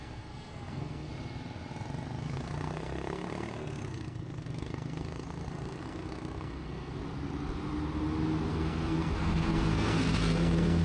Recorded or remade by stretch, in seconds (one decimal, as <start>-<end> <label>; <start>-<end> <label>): 0.0-1.1 remade; 1.1-2.2 recorded; 2.2-7.0 remade; 7.0-8.5 recorded; 8.5-10.8 remade